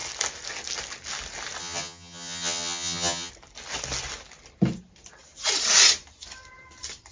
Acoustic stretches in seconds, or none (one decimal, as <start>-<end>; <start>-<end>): 0.0-1.6; 3.3-7.1